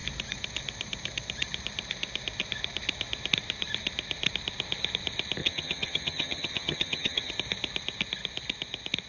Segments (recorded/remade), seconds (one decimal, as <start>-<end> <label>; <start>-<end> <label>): 0.0-5.4 recorded; 5.4-7.3 remade; 7.3-9.1 recorded